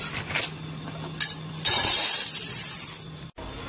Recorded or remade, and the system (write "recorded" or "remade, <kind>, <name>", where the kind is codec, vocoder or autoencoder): recorded